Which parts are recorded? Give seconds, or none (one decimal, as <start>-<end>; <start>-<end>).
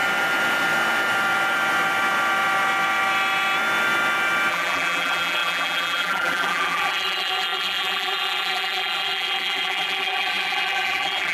0.0-4.5